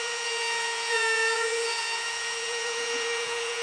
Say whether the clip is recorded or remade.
remade